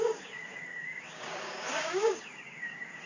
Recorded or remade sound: remade